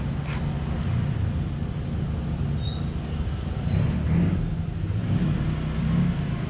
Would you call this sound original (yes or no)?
yes